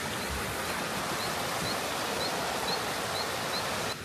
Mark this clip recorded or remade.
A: recorded